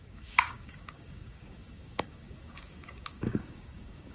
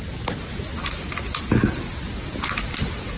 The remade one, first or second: first